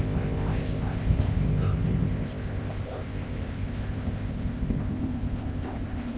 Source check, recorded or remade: remade